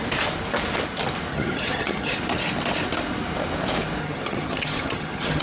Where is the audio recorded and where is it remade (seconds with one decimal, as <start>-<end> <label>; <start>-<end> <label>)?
0.0-1.3 recorded; 1.3-2.2 remade; 2.2-4.0 recorded; 4.0-5.4 remade